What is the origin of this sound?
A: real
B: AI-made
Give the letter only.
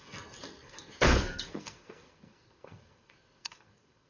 B